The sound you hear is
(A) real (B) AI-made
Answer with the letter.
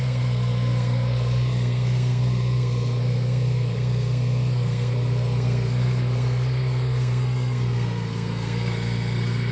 B